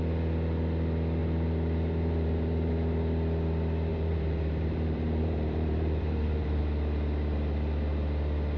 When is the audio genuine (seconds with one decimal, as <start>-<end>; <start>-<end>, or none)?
0.0-1.2; 2.7-3.9; 6.6-8.6